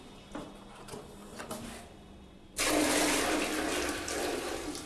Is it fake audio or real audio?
real